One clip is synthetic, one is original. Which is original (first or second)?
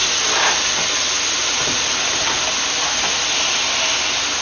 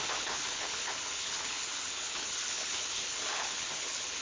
first